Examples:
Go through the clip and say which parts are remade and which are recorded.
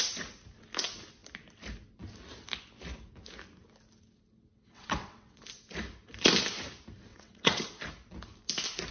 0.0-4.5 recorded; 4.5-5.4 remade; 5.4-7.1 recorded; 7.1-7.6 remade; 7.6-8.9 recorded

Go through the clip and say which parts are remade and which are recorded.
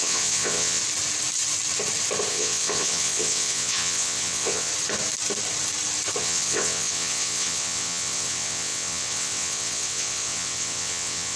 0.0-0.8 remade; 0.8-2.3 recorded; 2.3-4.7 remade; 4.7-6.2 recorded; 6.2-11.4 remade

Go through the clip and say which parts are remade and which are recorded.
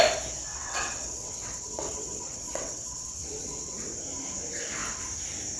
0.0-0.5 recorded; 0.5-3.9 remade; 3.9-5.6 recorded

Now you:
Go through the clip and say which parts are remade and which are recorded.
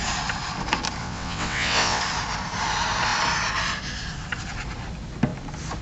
0.0-1.0 recorded; 1.0-2.0 remade; 2.0-5.8 recorded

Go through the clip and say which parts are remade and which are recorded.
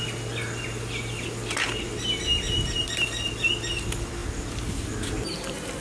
0.0-5.8 recorded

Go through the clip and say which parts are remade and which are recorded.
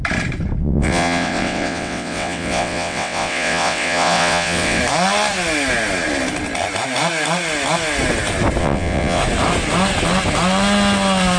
0.0-0.6 recorded; 0.6-4.8 remade; 4.8-8.6 recorded; 8.6-9.2 remade; 9.2-11.4 recorded